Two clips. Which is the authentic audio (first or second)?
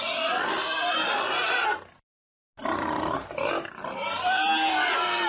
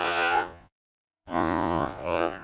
first